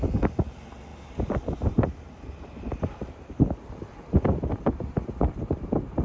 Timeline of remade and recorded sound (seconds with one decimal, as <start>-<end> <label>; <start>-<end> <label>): 0.0-0.9 recorded; 0.9-2.4 remade; 2.4-6.0 recorded